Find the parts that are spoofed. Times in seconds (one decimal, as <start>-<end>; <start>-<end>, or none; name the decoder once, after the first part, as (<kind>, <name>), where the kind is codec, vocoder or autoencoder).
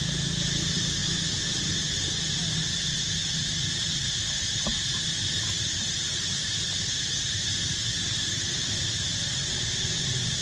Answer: none